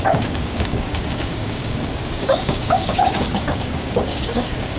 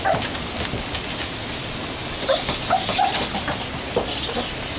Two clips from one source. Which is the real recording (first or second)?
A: second